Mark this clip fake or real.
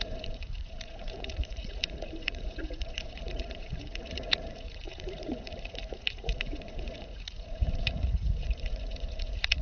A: fake